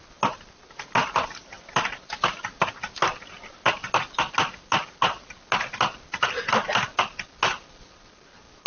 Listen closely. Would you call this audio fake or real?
real